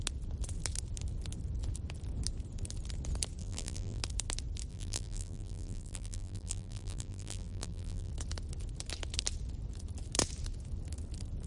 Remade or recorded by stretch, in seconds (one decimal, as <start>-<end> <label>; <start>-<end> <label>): 0.0-3.4 recorded; 3.4-4.0 remade; 4.0-4.7 recorded; 4.7-8.1 remade; 8.1-11.5 recorded